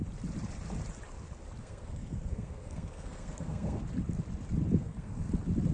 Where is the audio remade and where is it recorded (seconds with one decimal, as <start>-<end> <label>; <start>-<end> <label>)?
0.0-1.6 recorded; 1.6-3.8 remade; 3.8-4.8 recorded; 4.8-5.3 remade; 5.3-5.7 recorded